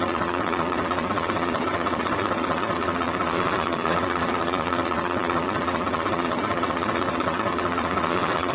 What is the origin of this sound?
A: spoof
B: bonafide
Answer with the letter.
A